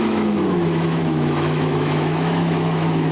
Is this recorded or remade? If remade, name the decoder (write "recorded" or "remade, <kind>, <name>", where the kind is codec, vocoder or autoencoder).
remade, autoencoder, DAC-VAE